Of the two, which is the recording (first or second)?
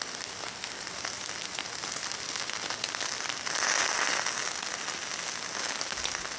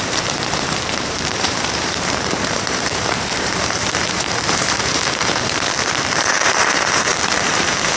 first